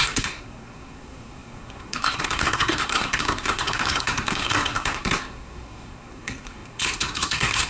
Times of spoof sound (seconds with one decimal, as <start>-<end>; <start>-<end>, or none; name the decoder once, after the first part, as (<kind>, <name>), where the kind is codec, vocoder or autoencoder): 0.0-7.7 (codec, SNAC)